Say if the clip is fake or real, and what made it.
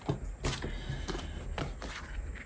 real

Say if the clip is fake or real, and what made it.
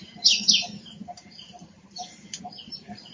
real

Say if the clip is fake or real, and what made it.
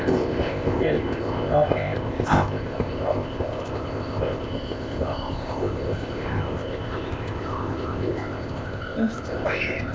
fake, codec, ZipCodec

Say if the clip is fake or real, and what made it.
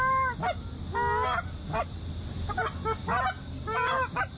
real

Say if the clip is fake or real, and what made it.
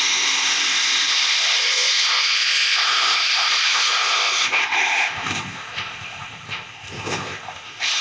fake, codec, ZipCodec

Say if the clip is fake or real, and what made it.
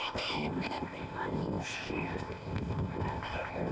fake, codec, ZipCodec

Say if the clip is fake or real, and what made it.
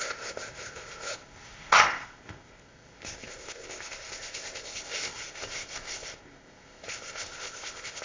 fake, codec, ZipCodec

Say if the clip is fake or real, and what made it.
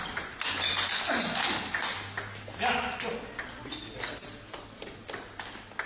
real